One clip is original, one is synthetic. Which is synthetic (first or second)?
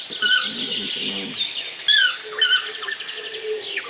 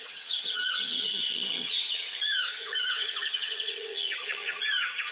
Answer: second